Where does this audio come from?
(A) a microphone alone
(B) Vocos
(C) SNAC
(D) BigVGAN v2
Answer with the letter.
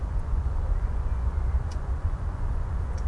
B